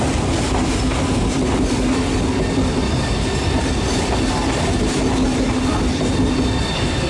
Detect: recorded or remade recorded